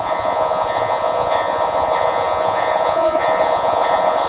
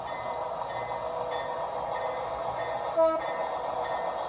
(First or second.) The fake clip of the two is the first